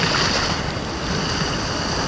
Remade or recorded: recorded